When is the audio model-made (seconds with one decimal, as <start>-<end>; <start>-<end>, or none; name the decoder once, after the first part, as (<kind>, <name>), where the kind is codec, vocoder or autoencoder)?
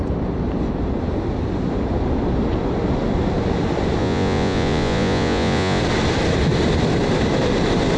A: 4.0-5.8 (vocoder, Vocos)